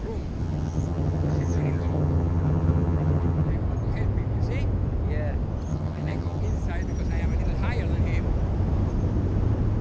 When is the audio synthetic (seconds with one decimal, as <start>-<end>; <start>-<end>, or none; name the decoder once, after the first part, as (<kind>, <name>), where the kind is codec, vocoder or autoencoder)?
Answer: 0.4-3.5 (vocoder, HiFi-GAN); 5.7-6.4